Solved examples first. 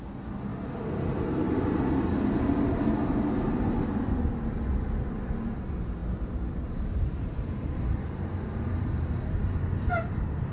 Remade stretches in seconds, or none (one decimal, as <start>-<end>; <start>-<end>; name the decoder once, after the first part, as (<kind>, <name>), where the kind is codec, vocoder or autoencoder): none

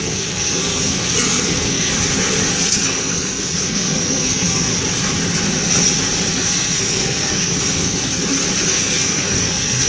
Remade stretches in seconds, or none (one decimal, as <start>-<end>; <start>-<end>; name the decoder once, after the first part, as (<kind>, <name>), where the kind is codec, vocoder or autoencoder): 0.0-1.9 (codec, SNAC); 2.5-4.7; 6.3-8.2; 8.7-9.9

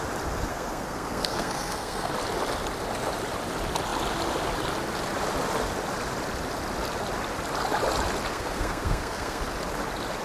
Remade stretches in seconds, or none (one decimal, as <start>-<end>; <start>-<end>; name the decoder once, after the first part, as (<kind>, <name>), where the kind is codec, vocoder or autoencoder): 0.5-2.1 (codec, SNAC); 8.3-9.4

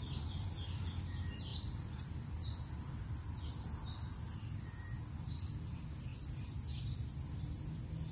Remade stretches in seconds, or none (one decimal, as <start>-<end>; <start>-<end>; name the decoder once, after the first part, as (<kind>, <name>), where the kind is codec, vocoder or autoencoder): 1.5-2.1 (vocoder, BigVGAN v2)